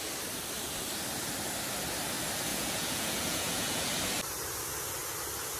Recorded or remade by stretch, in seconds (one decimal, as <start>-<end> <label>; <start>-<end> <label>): 0.0-2.5 recorded; 2.5-3.9 remade; 3.9-5.6 recorded